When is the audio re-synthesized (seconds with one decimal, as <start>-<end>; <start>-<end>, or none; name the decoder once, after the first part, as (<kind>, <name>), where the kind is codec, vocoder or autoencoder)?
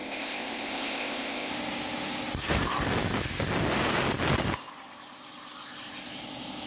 0.0-1.5 (codec, ZipCodec)